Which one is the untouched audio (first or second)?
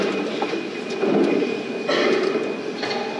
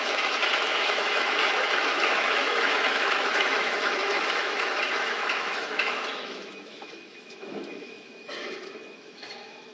first